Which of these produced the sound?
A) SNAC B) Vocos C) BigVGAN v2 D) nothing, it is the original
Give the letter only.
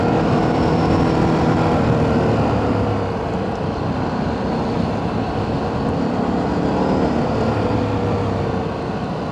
D